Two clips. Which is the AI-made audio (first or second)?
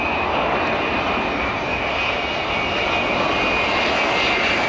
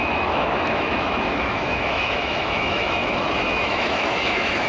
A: second